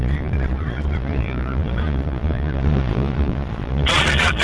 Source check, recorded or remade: remade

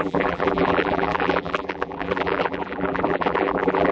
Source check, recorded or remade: remade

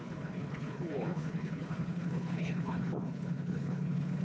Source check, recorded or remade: remade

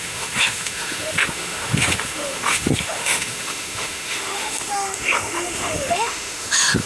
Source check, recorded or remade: remade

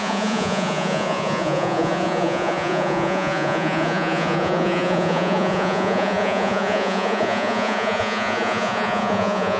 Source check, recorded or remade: remade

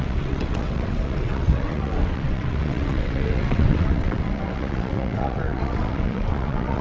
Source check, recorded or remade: remade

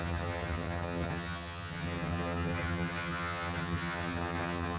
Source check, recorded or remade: remade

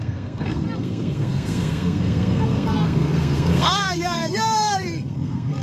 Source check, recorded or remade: remade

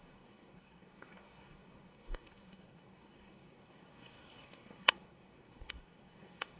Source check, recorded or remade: remade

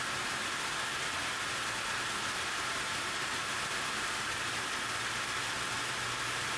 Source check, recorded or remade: recorded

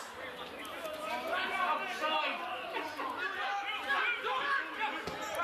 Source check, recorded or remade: recorded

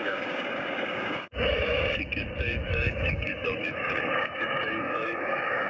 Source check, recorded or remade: remade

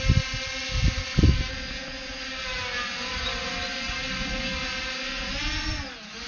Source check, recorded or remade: recorded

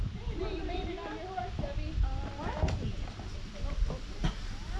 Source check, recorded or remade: recorded